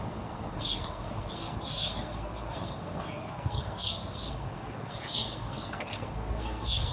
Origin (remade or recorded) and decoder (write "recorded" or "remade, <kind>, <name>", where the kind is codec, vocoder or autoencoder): remade, codec, SNAC